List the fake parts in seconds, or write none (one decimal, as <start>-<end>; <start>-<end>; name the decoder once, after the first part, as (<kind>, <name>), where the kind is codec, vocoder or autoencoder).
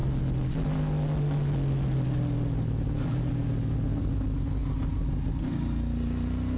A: none